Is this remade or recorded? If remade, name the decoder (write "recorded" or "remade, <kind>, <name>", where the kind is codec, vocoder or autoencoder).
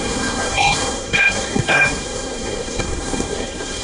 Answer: remade, codec, SNAC